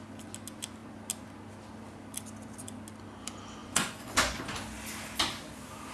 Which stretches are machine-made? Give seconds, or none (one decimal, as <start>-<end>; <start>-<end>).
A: 3.6-4.4